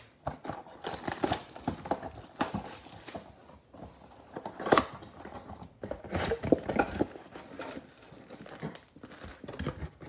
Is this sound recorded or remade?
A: recorded